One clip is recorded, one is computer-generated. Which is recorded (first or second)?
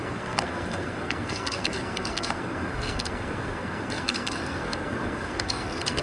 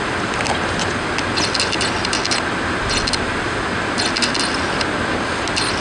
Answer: second